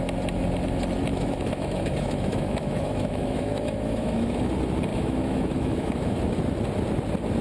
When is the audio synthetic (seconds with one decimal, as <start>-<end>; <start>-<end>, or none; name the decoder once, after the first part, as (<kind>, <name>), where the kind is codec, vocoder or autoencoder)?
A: 1.1-4.5 (autoencoder, DAC-VAE); 4.9-6.2